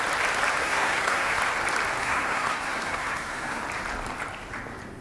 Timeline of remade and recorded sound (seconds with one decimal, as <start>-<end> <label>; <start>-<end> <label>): 0.0-0.6 recorded; 0.6-1.4 remade; 1.4-2.0 recorded; 2.0-3.6 remade; 3.6-5.0 recorded